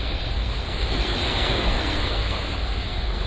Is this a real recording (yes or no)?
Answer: no